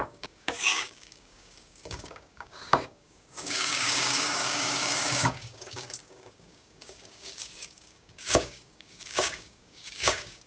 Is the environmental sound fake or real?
fake